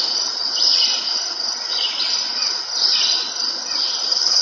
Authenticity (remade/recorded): recorded